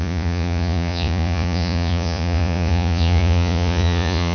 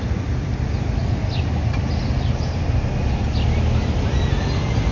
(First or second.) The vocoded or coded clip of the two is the first